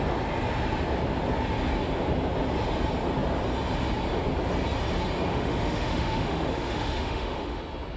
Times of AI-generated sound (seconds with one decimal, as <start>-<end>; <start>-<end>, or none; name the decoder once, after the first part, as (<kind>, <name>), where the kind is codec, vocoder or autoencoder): 5.3-7.6 (autoencoder, DAC-VAE)